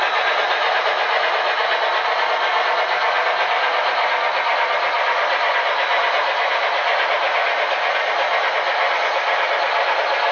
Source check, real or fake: real